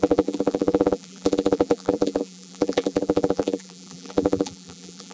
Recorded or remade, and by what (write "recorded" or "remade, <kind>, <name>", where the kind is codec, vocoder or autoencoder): remade, vocoder, BigVGAN v2